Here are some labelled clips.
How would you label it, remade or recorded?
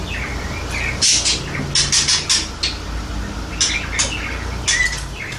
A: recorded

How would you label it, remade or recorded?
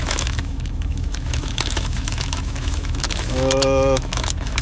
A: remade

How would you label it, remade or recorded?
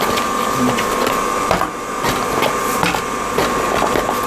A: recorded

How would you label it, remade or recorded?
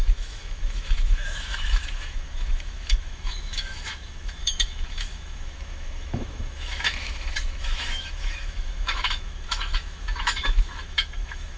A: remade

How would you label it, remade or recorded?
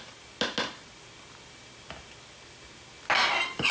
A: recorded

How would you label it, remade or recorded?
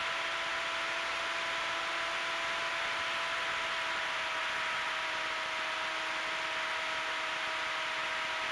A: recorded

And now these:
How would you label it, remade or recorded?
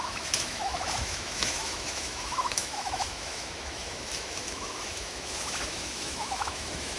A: remade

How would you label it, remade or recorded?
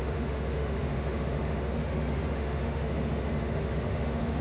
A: remade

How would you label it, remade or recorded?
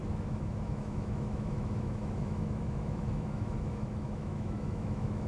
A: remade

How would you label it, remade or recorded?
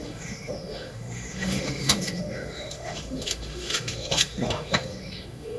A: remade